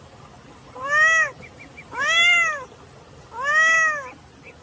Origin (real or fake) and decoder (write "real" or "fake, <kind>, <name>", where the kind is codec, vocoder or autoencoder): real